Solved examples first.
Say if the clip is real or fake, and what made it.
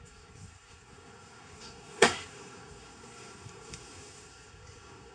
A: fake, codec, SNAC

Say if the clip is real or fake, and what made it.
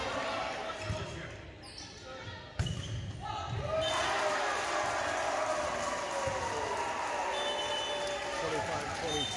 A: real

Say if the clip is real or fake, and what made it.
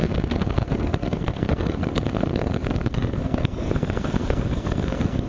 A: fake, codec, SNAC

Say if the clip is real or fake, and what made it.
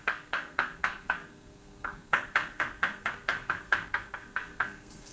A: fake, codec, SNAC